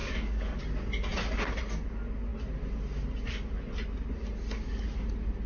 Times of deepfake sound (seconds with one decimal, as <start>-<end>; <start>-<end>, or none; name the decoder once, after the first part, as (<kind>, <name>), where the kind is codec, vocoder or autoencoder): 0.0-0.6 (codec, DAC)